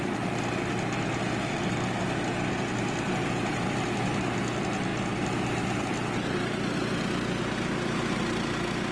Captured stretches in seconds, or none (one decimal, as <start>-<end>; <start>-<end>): 0.0-8.9